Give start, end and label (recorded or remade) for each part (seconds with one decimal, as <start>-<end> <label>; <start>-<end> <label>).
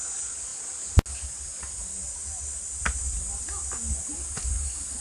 0.0-5.0 recorded